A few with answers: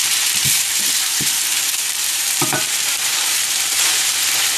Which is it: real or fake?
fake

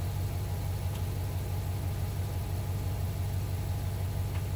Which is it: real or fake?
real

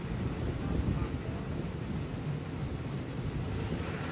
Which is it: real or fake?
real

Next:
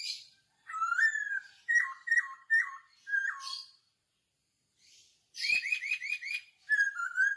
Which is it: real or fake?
fake